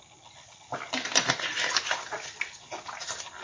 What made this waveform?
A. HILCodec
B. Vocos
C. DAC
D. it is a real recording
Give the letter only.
D